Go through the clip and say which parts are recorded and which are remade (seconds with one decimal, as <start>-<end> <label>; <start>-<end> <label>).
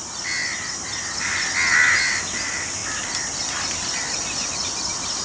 0.0-5.2 recorded